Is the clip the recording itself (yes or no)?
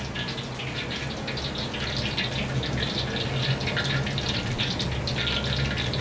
yes